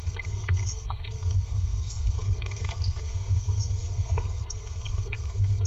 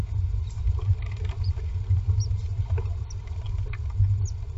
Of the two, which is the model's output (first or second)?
first